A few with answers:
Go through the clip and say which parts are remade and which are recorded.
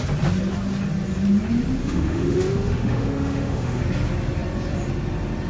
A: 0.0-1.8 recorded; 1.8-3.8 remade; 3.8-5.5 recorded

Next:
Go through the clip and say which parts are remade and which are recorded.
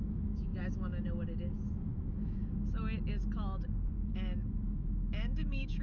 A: 0.0-0.5 remade; 0.5-1.7 recorded; 1.7-2.4 remade; 2.4-4.1 recorded; 4.1-5.8 remade